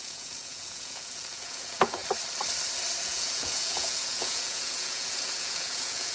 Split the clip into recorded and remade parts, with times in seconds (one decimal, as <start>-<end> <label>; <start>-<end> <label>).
0.0-2.0 remade; 2.0-3.0 recorded; 3.0-6.1 remade